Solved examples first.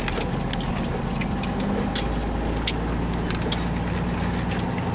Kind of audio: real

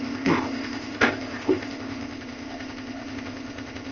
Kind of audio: fake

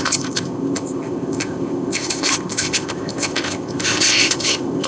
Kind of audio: fake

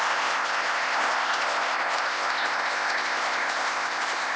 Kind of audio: fake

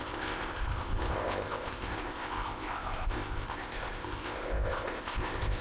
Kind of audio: fake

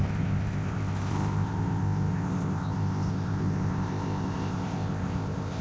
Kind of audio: fake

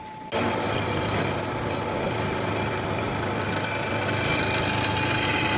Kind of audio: real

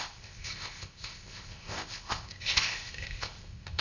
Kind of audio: fake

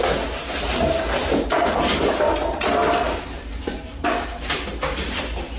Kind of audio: real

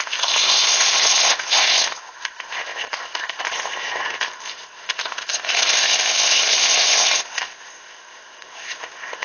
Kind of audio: fake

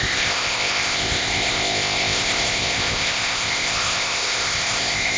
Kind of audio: fake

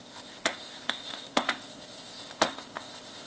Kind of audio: fake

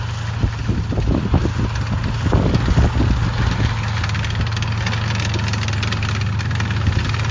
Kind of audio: real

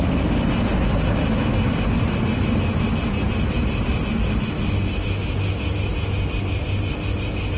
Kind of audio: real